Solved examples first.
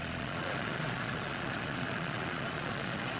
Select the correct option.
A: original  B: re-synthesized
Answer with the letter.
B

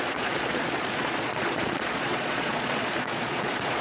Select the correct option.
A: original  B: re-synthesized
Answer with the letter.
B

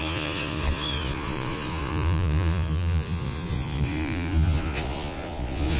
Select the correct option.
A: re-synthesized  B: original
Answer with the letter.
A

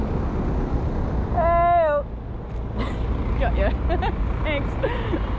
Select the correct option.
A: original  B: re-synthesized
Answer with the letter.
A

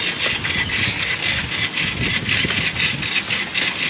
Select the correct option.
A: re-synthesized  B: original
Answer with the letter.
B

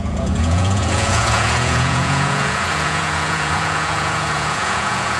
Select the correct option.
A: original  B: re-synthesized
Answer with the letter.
B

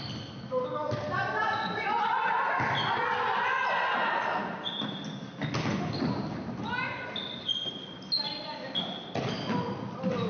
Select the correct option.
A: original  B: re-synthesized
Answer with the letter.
A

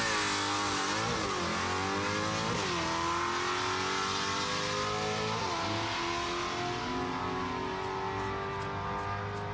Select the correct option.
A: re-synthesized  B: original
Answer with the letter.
B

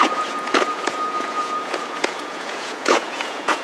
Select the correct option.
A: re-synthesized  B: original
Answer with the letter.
A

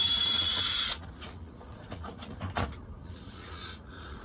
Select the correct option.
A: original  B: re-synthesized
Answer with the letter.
B